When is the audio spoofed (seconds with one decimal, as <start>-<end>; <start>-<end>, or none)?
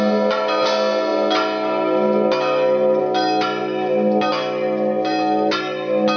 none